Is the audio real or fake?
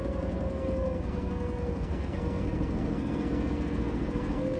fake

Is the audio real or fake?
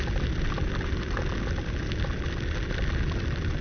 real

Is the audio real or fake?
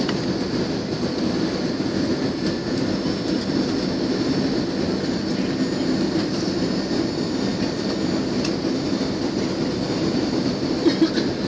real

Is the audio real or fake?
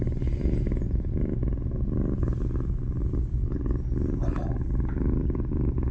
real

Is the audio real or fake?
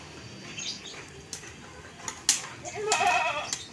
real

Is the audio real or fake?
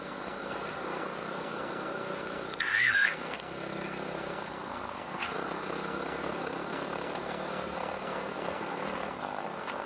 fake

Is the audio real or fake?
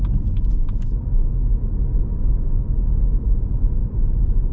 real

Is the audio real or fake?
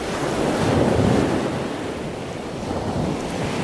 real